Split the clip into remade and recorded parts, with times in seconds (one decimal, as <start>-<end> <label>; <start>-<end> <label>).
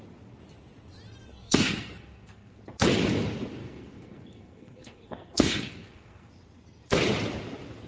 0.0-1.3 recorded; 1.3-2.6 remade; 2.6-3.6 recorded; 3.6-6.3 remade; 6.3-7.9 recorded